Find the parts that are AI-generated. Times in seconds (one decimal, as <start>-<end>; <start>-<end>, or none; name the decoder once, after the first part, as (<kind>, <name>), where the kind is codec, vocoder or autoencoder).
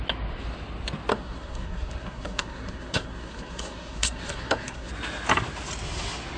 1.1-4.9 (codec, SNAC)